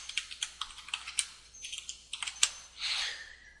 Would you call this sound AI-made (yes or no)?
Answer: no